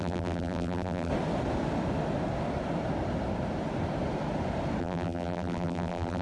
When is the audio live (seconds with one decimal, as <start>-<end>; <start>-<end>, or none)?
1.1-4.8